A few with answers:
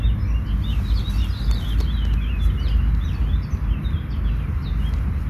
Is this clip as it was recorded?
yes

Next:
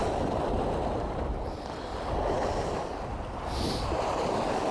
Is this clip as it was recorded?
yes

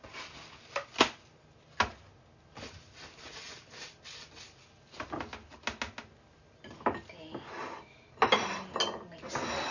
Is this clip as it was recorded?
yes